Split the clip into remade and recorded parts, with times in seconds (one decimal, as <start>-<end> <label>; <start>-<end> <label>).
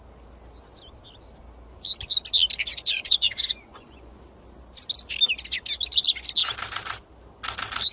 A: 0.0-2.7 recorded; 2.7-4.2 remade; 4.2-7.9 recorded